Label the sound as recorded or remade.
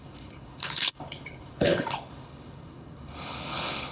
remade